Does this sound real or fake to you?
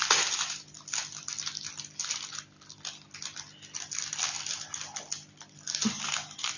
real